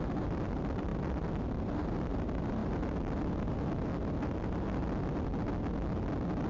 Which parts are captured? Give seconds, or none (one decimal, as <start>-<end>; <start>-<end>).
4.8-6.5